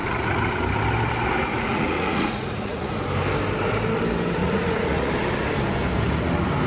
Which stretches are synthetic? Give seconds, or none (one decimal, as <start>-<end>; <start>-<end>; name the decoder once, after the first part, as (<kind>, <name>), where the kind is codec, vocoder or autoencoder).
0.0-0.6 (vocoder, Vocos); 1.5-2.9; 4.4-5.1